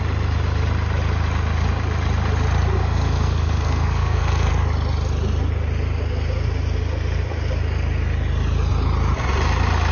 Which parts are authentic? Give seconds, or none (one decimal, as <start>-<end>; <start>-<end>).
0.0-2.8; 4.5-9.9